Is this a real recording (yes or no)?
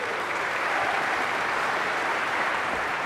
no